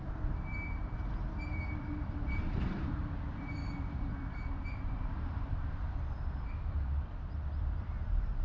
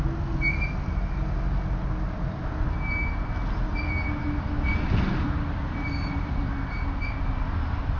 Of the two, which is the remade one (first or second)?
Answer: first